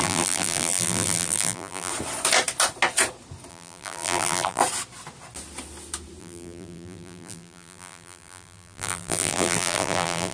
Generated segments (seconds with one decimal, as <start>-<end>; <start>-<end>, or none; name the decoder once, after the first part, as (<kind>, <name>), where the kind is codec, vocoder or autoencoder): 0.0-1.9 (vocoder, BigVGAN v2); 3.5-4.6; 6.2-10.3